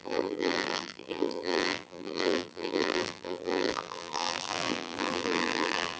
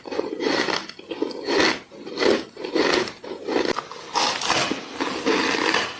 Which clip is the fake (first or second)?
first